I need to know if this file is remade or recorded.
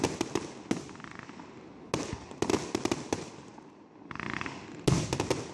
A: recorded